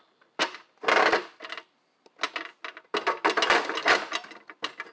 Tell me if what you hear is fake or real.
real